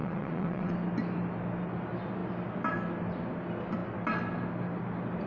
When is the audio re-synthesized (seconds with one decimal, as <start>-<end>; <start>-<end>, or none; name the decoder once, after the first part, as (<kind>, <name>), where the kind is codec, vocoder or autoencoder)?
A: 0.0-0.7 (vocoder, WaveNeXt)